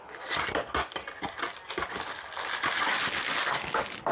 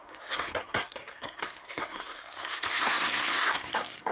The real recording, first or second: first